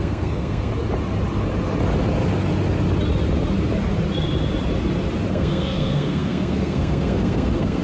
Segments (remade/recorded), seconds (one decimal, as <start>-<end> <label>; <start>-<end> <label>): 0.0-0.7 remade; 0.7-5.3 recorded; 5.3-7.8 remade